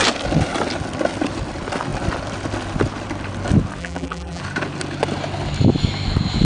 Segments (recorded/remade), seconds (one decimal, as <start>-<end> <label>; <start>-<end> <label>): 0.0-3.8 recorded; 3.8-4.4 remade; 4.4-6.4 recorded